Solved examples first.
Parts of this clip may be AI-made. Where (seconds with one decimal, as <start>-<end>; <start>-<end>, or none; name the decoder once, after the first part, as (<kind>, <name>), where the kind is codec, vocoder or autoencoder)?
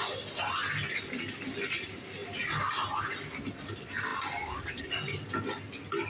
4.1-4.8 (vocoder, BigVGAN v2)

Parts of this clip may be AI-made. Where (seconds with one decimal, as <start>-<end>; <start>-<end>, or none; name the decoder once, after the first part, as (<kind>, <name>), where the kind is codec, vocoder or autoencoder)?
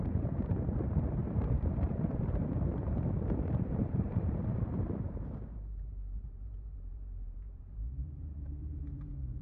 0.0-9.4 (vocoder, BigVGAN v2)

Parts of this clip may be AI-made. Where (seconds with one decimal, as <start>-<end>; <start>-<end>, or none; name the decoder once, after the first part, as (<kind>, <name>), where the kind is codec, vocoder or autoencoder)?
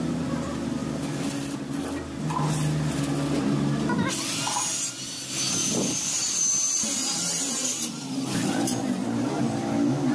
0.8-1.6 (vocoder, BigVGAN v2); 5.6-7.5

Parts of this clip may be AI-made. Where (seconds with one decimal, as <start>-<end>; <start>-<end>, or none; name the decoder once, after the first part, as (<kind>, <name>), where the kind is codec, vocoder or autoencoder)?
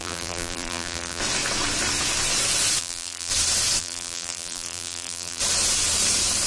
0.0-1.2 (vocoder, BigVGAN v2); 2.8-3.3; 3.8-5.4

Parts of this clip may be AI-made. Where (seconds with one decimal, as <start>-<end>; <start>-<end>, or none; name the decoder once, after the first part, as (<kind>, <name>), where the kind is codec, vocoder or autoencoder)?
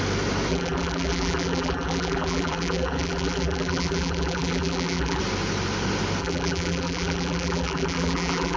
0.5-5.2 (vocoder, BigVGAN v2); 6.2-8.6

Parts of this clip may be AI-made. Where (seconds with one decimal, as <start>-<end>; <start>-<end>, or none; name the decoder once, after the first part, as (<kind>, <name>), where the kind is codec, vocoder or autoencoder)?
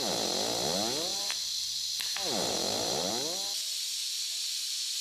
1.1-3.1 (vocoder, BigVGAN v2)